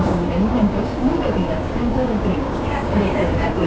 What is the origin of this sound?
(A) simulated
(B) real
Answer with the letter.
A